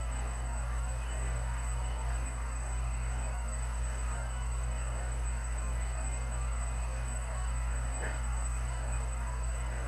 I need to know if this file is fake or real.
fake